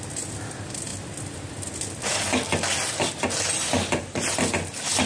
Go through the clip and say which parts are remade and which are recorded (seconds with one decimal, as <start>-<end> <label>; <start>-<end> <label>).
0.0-5.1 recorded